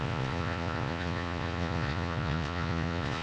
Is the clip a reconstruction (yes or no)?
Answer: yes